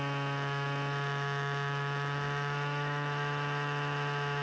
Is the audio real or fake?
fake